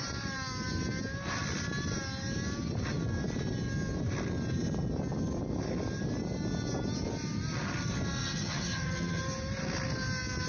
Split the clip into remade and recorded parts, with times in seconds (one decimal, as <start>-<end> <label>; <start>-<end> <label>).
0.0-8.2 recorded; 8.2-9.2 remade; 9.2-10.5 recorded